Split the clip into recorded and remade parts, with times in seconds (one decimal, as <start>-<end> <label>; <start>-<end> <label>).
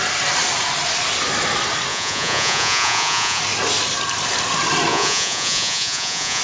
0.0-1.9 recorded; 1.9-3.4 remade; 3.4-4.9 recorded; 4.9-6.4 remade